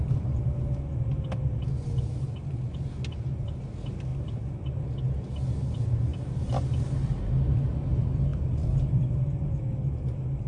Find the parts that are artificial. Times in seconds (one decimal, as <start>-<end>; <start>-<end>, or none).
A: 4.1-4.8; 6.1-7.2; 8.3-9.7